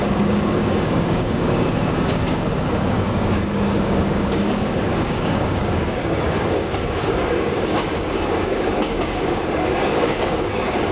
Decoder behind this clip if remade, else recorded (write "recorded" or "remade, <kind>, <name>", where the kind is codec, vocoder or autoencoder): remade, codec, DAC